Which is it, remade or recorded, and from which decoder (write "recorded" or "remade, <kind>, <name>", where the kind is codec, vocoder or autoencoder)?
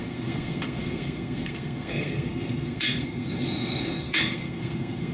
remade, codec, SNAC